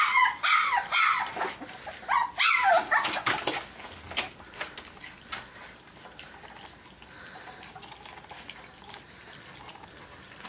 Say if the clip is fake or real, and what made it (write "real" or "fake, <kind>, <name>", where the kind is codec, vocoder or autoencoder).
real